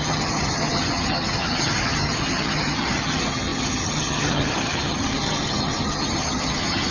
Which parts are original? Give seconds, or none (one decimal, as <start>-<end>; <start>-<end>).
none